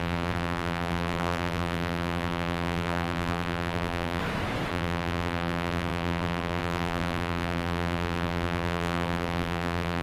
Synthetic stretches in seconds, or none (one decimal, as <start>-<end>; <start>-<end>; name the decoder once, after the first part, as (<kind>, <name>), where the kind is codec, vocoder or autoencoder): 0.0-4.2 (vocoder, BigVGAN v2); 4.7-10.0